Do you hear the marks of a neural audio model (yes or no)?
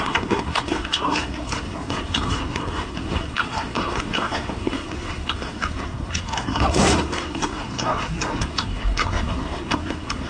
yes